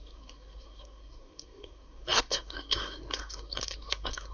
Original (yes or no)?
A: no